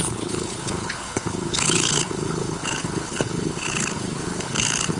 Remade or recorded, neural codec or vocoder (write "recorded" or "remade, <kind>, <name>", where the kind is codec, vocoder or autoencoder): remade, codec, HILCodec